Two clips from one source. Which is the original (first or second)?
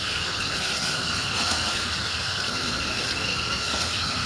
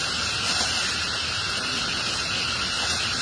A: second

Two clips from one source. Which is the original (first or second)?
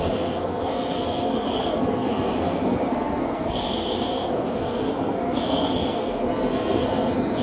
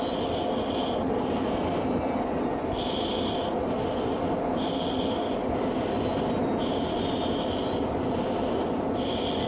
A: second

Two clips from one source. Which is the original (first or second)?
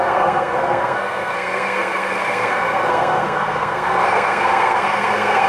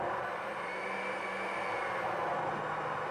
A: second